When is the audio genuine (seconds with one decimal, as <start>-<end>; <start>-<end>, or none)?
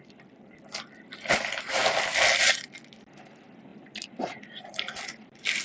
0.0-5.6